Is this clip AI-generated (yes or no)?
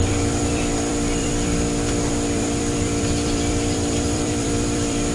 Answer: yes